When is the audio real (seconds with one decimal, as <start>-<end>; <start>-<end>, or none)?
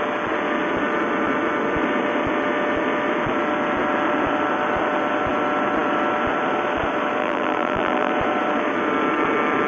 0.0-7.2; 8.1-9.7